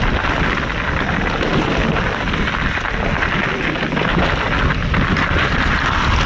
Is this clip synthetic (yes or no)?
no